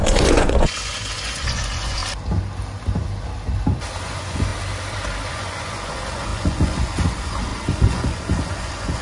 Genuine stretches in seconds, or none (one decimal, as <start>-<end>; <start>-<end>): 2.0-4.0; 4.5-5.3